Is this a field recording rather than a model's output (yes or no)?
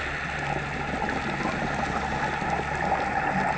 yes